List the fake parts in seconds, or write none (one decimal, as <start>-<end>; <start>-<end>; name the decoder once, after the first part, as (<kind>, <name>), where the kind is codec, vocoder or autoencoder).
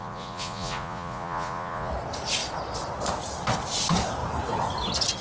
0.0-1.9 (vocoder, Vocos)